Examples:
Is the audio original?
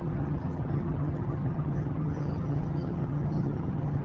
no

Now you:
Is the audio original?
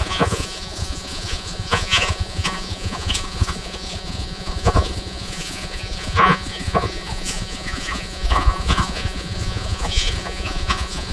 no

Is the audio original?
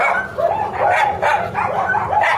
yes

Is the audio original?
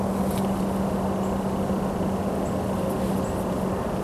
yes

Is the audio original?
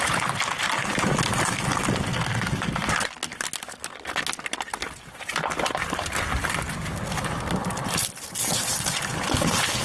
yes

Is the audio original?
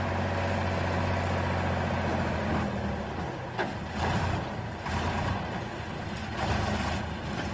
yes